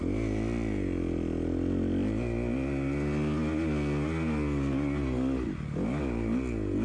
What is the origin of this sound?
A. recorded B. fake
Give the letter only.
A